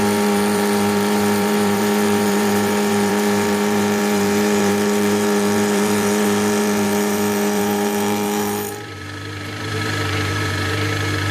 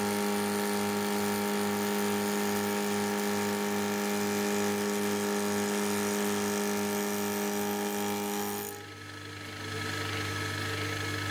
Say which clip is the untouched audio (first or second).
second